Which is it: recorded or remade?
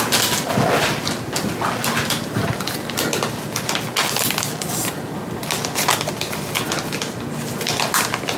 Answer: recorded